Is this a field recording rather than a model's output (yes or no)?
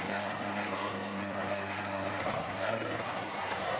no